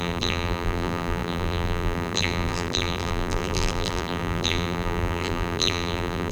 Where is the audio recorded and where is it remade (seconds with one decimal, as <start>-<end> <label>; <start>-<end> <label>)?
0.0-6.3 remade